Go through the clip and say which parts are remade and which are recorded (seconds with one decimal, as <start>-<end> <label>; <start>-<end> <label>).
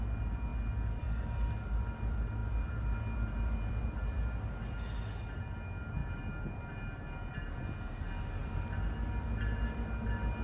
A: 0.0-10.4 recorded